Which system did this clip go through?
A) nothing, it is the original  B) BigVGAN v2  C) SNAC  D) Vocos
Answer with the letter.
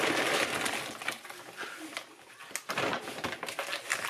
A